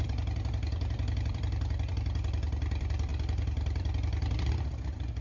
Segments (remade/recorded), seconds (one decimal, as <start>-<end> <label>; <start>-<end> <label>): 0.0-5.2 remade